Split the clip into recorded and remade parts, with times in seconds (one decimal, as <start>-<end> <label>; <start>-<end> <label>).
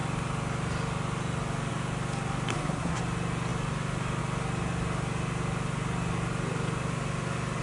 0.0-2.5 recorded; 2.5-3.0 remade; 3.0-7.6 recorded